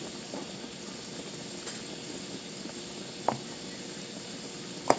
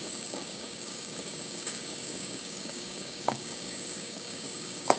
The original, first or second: first